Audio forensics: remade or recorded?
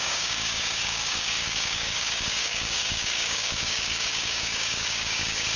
remade